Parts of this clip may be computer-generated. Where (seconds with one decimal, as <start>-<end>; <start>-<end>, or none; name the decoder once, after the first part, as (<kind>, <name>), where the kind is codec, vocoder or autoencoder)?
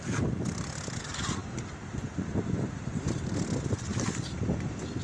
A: none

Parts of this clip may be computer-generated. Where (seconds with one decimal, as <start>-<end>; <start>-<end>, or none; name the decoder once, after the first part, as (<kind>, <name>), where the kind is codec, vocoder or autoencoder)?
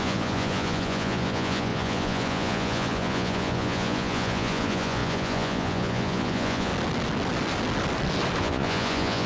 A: 0.0-6.7 (vocoder, Vocos); 8.4-9.3